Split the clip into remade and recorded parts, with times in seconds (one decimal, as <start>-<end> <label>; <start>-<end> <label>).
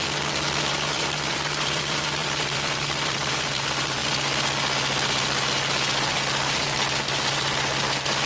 0.0-0.7 recorded; 0.7-4.0 remade; 4.0-8.3 recorded